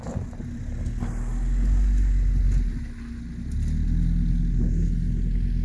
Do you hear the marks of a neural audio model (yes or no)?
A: no